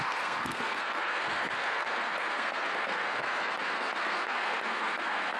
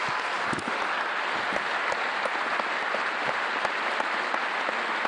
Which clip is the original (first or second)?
second